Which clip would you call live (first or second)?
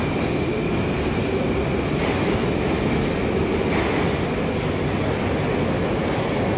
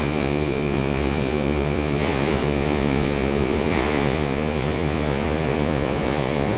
first